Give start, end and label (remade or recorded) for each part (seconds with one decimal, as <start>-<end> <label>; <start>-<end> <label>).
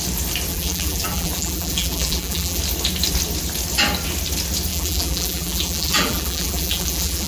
0.0-0.5 recorded; 0.5-2.6 remade; 2.6-4.7 recorded; 4.7-7.3 remade